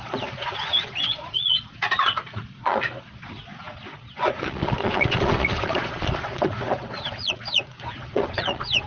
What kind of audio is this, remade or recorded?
remade